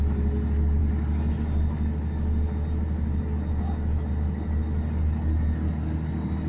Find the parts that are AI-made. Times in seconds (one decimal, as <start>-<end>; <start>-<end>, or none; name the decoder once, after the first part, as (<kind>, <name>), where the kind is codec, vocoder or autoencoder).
none